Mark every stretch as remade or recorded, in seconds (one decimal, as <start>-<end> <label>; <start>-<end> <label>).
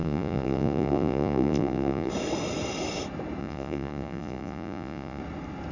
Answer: 0.0-2.1 remade; 2.1-3.4 recorded; 3.4-5.2 remade; 5.2-5.7 recorded